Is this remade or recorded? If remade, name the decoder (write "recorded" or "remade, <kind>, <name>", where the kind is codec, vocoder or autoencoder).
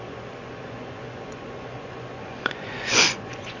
remade, vocoder, Vocos